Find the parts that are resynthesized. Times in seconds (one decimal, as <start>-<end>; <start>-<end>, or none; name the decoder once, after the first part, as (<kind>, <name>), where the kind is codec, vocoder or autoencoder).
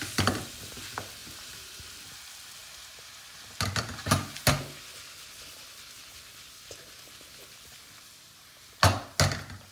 1.2-1.8 (vocoder, BigVGAN v2); 2.6-3.4